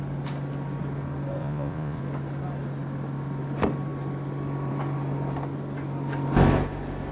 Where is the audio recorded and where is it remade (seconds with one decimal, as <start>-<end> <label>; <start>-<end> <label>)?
0.0-1.4 recorded; 1.4-2.0 remade; 2.0-7.1 recorded